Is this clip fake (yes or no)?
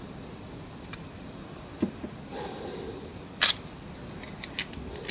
yes